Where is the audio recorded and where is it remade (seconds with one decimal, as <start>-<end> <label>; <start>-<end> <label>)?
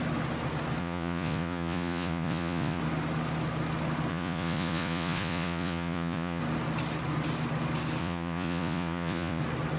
0.0-0.8 recorded; 0.8-2.8 remade; 2.8-4.1 recorded; 4.1-6.4 remade; 6.4-8.0 recorded; 8.0-9.4 remade; 9.4-9.8 recorded